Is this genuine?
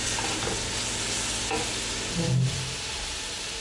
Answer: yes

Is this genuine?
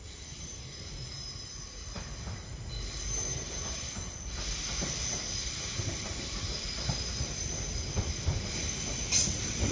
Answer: yes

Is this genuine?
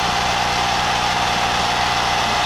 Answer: yes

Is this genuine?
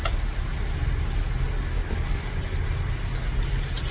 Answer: yes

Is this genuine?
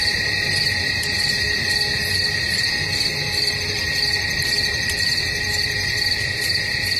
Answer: yes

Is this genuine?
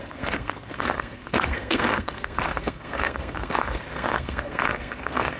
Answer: no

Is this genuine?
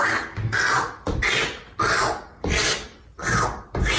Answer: yes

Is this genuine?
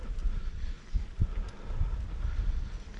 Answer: yes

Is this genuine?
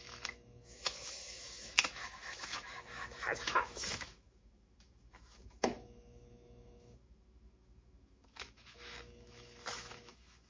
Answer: no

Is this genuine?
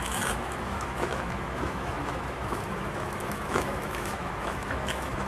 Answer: no